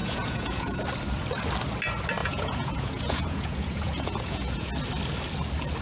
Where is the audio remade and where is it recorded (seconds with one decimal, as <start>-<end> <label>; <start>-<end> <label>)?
0.0-0.8 remade; 0.8-2.2 recorded; 2.2-4.7 remade; 4.7-5.8 recorded